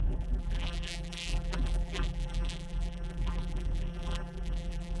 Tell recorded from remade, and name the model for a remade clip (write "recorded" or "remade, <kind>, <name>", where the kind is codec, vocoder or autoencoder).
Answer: remade, vocoder, BigVGAN v2